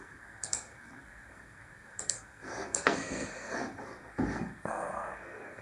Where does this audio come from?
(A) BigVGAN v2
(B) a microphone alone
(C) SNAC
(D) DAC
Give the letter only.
C